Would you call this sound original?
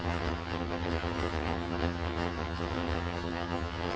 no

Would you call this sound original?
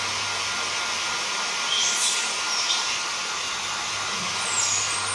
yes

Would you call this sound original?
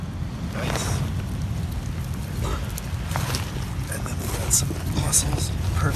yes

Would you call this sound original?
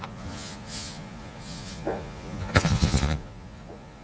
no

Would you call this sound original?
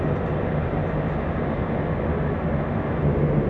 yes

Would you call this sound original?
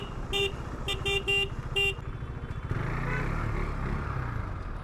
yes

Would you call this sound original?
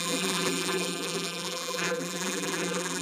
no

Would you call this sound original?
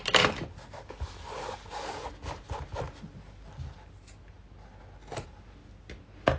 yes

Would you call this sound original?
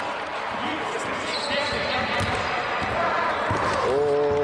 yes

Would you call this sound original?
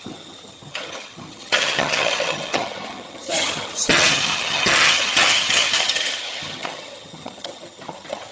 no